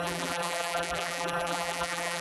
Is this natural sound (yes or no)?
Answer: no